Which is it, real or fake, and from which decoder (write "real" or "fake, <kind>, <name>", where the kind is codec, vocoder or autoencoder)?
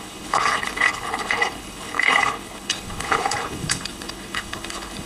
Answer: fake, codec, HILCodec